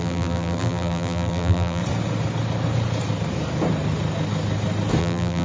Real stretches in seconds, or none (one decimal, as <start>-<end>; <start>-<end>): 1.8-5.0